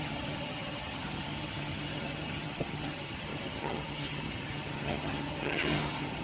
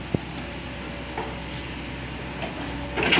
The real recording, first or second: second